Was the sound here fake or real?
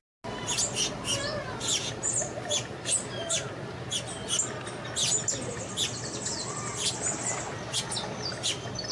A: real